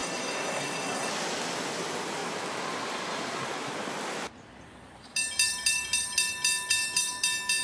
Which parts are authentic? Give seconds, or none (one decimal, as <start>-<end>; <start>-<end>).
1.1-7.6